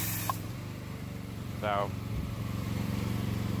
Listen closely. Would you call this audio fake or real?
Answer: fake